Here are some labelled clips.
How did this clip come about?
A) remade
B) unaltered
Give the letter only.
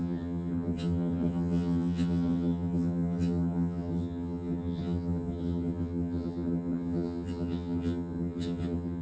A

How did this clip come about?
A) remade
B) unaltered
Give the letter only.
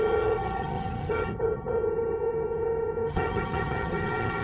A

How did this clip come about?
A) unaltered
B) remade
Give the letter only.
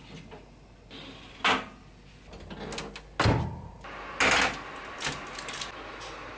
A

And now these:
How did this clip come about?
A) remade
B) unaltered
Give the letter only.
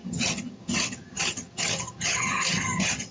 A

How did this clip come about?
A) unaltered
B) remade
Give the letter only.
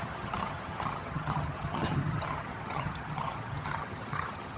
B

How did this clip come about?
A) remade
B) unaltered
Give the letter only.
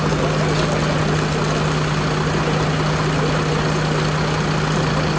B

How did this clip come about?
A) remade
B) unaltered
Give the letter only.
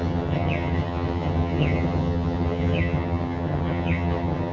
A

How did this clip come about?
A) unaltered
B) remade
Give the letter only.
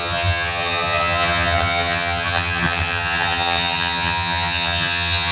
B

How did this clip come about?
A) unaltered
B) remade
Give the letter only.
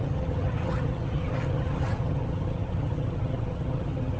B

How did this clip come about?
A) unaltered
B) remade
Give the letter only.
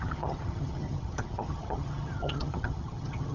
B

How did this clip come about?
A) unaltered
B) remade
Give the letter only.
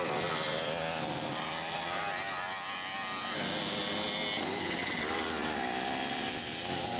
A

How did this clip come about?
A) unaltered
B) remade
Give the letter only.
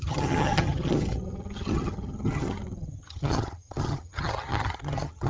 B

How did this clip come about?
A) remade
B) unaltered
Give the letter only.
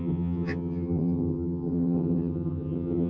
A